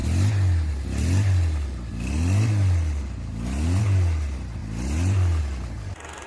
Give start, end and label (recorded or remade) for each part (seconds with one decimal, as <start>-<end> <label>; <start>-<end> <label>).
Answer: 0.0-6.3 recorded